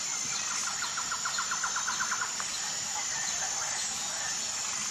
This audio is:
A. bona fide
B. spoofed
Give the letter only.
A